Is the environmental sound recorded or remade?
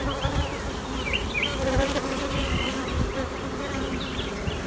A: remade